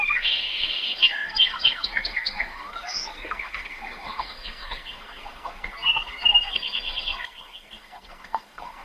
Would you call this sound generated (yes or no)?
yes